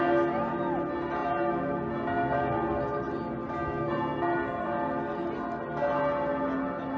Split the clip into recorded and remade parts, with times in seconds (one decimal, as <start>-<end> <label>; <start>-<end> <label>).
0.0-7.0 recorded